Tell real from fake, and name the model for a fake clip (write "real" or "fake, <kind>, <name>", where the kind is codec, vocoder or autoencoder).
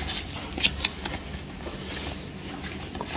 real